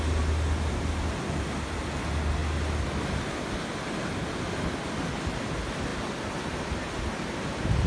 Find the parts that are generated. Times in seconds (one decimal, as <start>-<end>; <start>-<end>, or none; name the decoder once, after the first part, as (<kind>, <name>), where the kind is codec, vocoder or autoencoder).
none